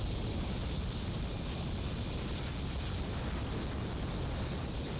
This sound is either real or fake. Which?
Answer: real